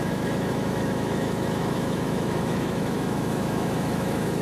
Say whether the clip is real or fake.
fake